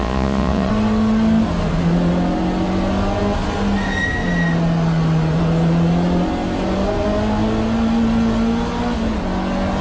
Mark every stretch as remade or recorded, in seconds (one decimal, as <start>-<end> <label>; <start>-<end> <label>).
0.0-0.7 remade; 0.7-9.8 recorded